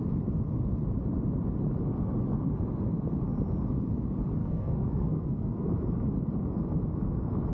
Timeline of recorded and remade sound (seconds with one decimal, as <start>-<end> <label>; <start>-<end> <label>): 0.0-4.4 recorded; 4.4-5.7 remade; 5.7-7.5 recorded